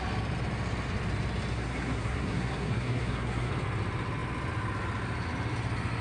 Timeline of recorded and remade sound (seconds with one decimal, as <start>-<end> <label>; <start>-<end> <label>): 0.0-1.5 recorded; 1.5-3.5 remade; 3.5-6.0 recorded

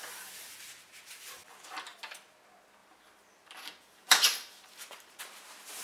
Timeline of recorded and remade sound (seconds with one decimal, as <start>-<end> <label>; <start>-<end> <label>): 0.0-2.8 recorded; 2.8-5.2 remade; 5.2-5.8 recorded

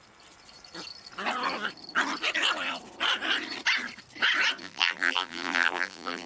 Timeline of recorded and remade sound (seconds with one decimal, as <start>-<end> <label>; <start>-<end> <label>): 0.0-4.6 recorded; 4.6-6.3 remade